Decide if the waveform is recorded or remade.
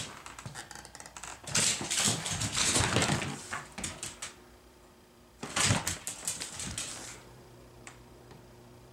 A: remade